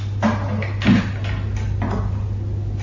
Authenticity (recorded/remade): recorded